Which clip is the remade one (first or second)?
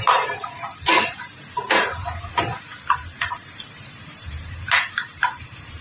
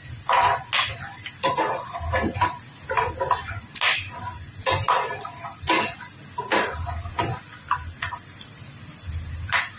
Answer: first